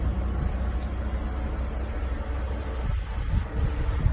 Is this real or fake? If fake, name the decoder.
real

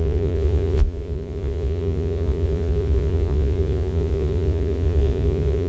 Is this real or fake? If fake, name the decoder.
fake, vocoder, Vocos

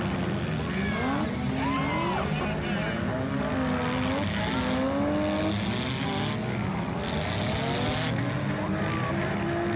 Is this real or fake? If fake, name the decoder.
real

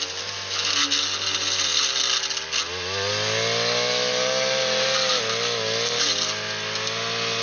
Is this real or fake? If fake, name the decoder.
real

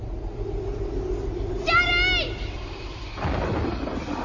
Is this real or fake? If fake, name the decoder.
real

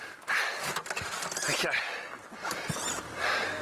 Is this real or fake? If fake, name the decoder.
real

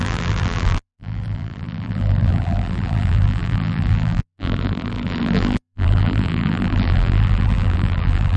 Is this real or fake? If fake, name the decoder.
fake, vocoder, BigVGAN v2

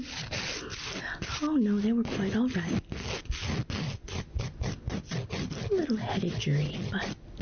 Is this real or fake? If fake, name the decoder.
real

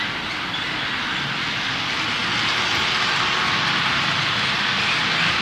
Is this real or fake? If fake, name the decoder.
real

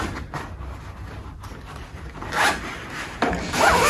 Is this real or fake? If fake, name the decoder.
real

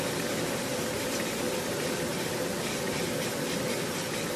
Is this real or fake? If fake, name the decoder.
real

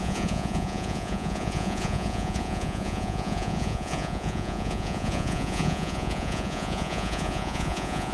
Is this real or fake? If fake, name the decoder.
fake, vocoder, Vocos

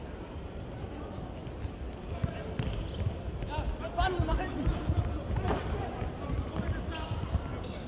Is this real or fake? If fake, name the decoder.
real